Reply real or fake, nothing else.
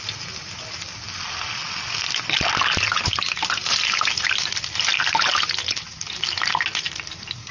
real